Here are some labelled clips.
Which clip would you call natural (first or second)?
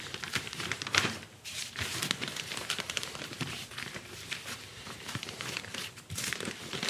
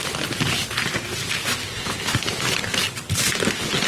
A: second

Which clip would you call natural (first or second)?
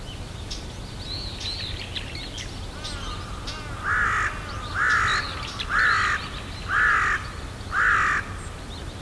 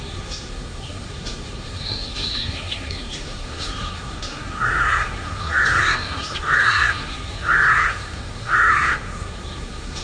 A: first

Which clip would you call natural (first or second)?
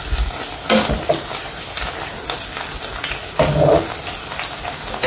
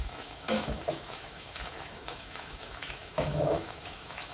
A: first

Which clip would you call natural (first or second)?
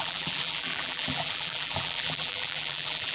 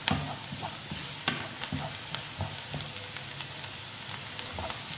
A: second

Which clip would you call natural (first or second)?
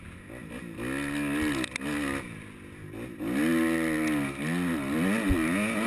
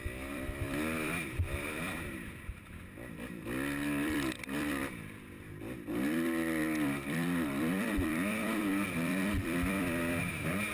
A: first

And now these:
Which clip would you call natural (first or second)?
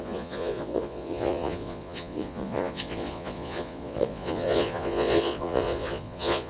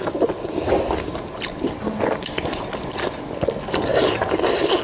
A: second